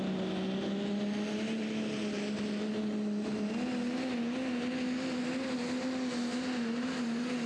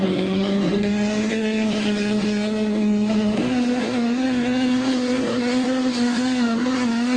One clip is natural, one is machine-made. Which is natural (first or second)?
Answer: first